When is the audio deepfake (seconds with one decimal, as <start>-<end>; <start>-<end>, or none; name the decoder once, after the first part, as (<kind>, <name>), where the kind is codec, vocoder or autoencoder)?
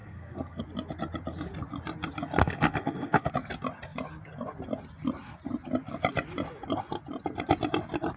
0.0-0.6 (codec, SNAC); 2.4-3.3